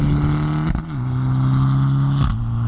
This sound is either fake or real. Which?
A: real